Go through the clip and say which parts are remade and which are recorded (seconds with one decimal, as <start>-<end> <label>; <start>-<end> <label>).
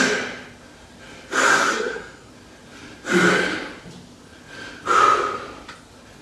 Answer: 0.0-1.5 recorded; 1.5-2.3 remade; 2.3-6.2 recorded